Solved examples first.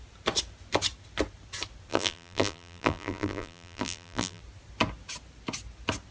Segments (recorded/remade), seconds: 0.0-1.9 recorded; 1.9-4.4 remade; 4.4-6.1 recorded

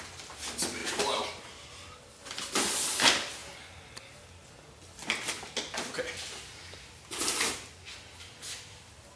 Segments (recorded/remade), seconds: 0.0-0.8 recorded; 0.8-1.4 remade; 1.4-9.2 recorded

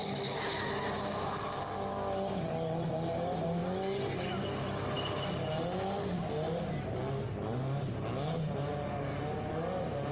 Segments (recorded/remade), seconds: 0.0-10.1 recorded

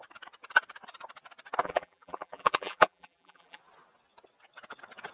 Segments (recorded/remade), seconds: 0.0-1.6 recorded; 1.6-3.6 remade; 3.6-5.1 recorded

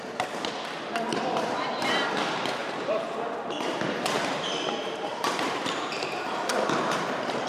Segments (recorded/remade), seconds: 0.0-1.1 recorded; 1.1-2.0 remade; 2.0-2.6 recorded; 2.6-7.0 remade; 7.0-7.5 recorded

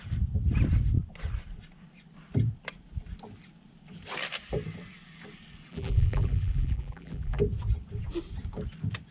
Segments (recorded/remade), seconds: 0.0-5.7 recorded; 5.7-7.4 remade; 7.4-9.1 recorded

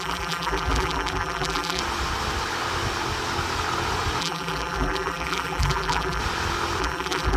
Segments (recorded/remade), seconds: 0.0-1.8 remade; 1.8-4.2 recorded; 4.2-6.2 remade; 6.2-6.8 recorded; 6.8-7.4 remade

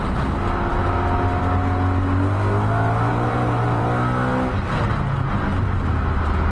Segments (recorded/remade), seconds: 0.0-3.1 recorded; 3.1-3.8 remade; 3.8-5.5 recorded; 5.5-6.5 remade